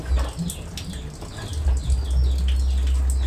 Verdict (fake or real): real